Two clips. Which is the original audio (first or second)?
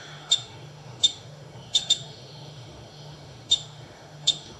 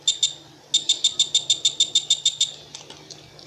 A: second